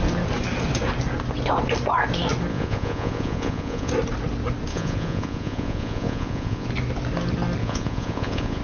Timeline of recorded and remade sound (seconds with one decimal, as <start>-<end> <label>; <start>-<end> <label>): 0.0-2.5 recorded; 2.5-3.9 remade; 3.9-4.7 recorded; 4.7-6.7 remade; 6.7-7.6 recorded; 7.6-8.6 remade